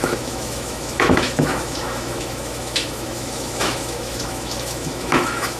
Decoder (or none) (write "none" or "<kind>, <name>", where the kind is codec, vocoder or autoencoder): autoencoder, DAC-VAE